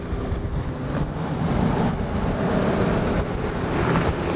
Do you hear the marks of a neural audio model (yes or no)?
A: no